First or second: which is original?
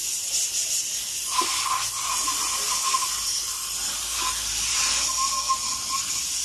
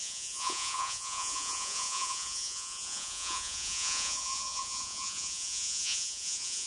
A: first